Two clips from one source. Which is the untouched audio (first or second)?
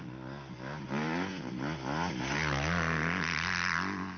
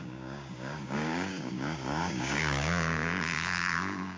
first